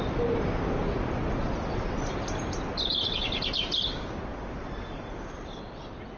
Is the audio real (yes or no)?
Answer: yes